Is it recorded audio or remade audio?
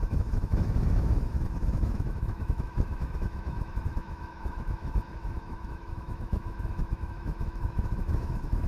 remade